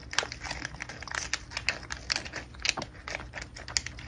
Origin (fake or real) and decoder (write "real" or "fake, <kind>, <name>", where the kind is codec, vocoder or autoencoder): real